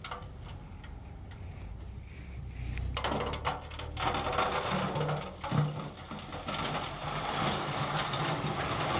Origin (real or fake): real